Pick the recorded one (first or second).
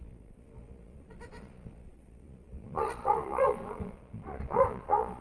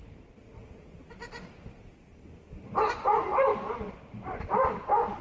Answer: second